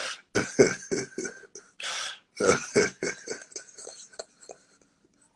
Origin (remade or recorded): recorded